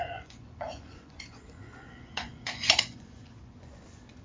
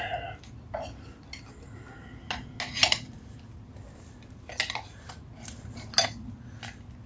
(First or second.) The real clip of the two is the second